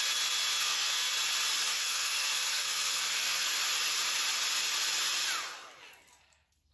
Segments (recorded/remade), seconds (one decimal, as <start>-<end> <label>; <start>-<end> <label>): 0.0-0.6 recorded; 0.6-1.1 remade; 1.1-1.7 recorded; 1.7-3.6 remade; 3.6-6.7 recorded